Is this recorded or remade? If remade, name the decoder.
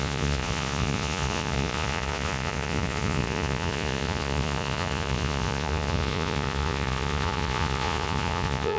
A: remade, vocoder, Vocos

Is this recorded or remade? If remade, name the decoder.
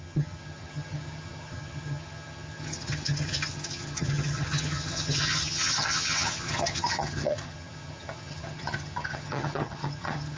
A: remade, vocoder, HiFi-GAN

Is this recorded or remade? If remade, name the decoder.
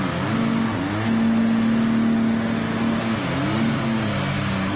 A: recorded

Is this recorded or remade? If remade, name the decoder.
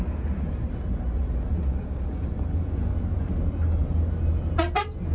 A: recorded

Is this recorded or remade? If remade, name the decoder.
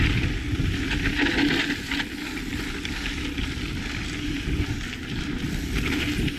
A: recorded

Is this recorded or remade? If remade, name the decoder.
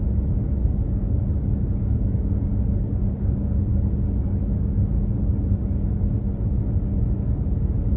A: recorded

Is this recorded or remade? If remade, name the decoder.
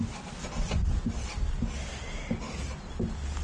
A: recorded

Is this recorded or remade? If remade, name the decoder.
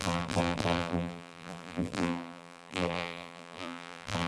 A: remade, vocoder, BigVGAN v2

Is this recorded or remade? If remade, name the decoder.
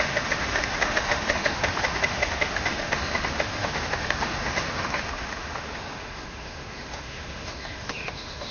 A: remade, autoencoder, DAC-VAE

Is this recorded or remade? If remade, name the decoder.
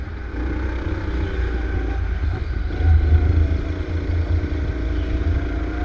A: recorded